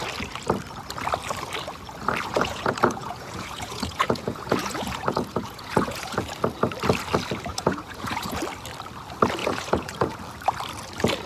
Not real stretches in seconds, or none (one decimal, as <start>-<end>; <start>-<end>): 2.3-6.2; 7.5-8.4; 9.4-10.2